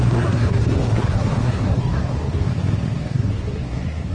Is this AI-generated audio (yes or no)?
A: yes